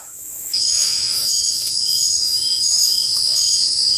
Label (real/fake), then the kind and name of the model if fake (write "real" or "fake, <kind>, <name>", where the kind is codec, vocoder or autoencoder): fake, autoencoder, DAC-VAE